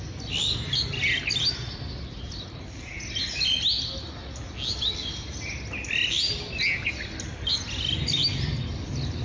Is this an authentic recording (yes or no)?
yes